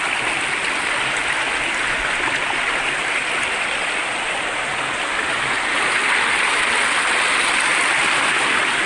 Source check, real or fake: real